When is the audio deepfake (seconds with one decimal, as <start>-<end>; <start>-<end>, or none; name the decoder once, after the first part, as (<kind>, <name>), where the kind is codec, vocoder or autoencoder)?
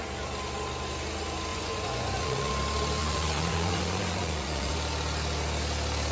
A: 1.5-2.5 (vocoder, Vocos); 3.0-4.7